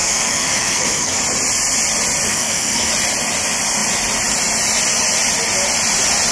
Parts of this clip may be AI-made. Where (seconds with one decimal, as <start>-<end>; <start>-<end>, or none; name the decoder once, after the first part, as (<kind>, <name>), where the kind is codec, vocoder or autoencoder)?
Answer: 0.0-1.2 (codec, SNAC); 2.3-2.9